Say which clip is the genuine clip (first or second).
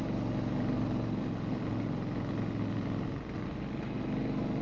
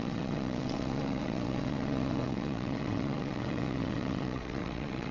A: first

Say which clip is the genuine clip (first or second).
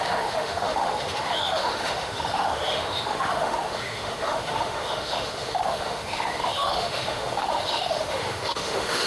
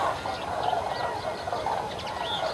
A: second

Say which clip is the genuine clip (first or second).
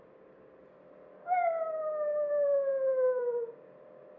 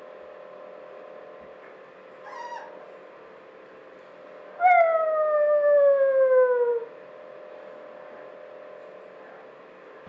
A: second